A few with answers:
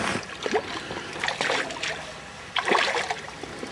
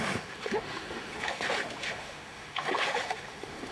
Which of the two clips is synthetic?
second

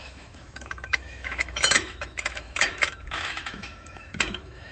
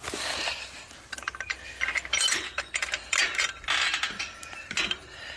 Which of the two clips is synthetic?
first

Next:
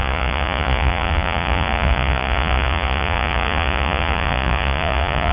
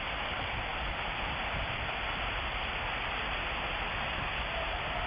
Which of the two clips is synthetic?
first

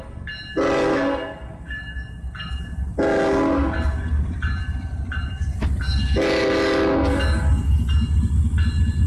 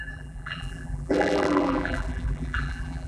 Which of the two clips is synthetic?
second